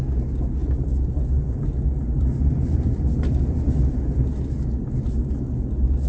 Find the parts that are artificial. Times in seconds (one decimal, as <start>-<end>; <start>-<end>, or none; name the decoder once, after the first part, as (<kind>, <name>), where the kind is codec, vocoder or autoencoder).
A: 0.6-4.2 (vocoder, BigVGAN v2)

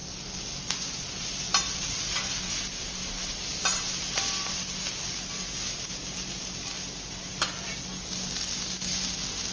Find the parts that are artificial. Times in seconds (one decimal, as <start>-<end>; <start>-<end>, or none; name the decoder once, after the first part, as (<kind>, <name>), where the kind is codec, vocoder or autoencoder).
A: none

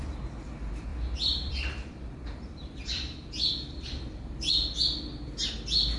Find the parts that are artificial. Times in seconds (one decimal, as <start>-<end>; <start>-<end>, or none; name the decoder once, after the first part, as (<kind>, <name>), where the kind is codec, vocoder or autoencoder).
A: 0.9-4.5 (vocoder, BigVGAN v2)

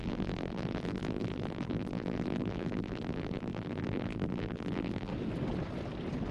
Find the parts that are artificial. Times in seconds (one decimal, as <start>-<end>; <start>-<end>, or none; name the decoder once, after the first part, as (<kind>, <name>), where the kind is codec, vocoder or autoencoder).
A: 0.0-5.1 (vocoder, BigVGAN v2)

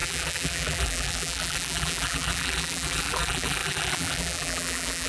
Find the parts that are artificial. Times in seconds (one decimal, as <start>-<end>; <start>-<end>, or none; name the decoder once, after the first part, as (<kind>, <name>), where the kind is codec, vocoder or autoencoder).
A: 0.0-5.1 (vocoder, BigVGAN v2)

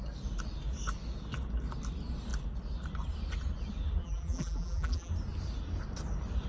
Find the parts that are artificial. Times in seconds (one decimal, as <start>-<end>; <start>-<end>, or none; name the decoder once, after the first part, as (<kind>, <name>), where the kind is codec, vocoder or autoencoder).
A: 4.0-5.1 (vocoder, BigVGAN v2)